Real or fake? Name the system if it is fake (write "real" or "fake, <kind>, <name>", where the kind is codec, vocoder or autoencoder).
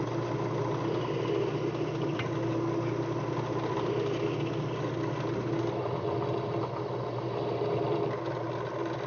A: real